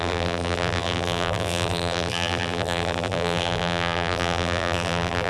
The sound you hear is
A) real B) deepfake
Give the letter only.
B